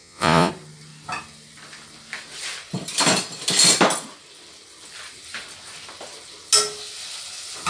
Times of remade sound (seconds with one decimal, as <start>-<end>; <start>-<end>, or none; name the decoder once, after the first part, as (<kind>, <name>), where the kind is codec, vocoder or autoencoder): 0.0-0.5 (vocoder, Vocos)